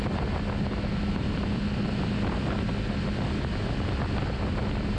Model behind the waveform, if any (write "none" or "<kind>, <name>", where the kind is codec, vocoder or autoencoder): none